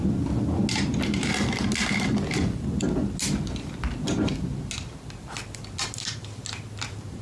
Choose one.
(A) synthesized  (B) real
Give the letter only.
B